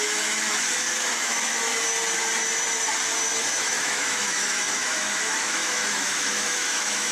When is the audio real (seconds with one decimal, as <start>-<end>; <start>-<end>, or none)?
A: 1.7-3.6